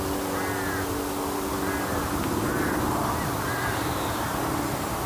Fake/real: real